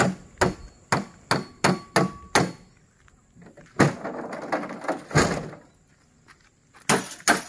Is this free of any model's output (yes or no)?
yes